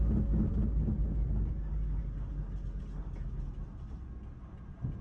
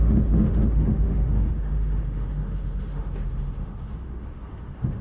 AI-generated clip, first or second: second